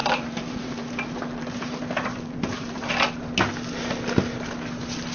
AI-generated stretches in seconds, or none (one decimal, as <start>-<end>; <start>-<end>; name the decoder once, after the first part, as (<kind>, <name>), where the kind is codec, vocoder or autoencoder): 0.0-2.9 (vocoder, BigVGAN v2)